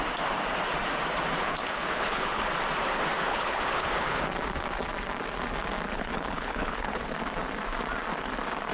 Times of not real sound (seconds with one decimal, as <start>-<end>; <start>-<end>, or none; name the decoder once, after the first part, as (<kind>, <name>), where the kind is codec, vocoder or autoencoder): 1.4-2.5 (codec, HILCodec); 3.3-4.2; 5.9-7.0